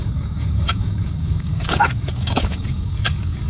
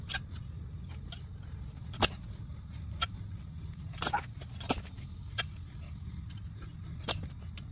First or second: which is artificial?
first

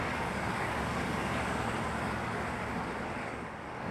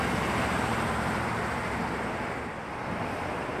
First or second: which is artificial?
first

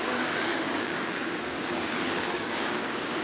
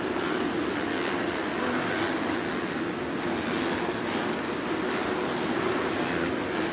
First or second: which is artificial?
first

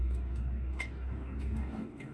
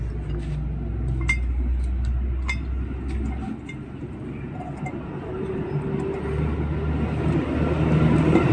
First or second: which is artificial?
first